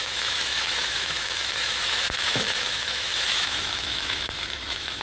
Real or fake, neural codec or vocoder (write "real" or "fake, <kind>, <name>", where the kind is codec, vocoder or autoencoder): fake, autoencoder, DAC-VAE